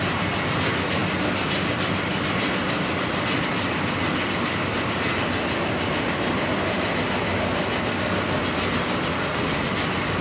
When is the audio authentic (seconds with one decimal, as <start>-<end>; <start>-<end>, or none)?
0.0-9.1; 9.7-10.2

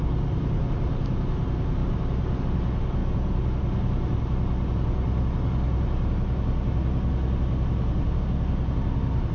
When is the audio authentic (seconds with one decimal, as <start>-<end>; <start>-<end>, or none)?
0.0-9.3

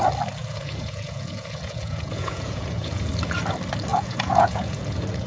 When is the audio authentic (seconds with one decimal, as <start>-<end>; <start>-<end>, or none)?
0.0-0.4; 3.1-3.9

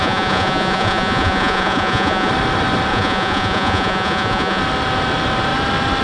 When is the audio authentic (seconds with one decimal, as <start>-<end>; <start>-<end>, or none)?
2.3-2.9; 4.6-6.0

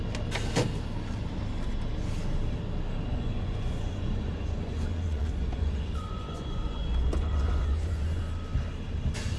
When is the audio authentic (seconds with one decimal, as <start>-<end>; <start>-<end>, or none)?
0.0-3.1; 8.2-9.4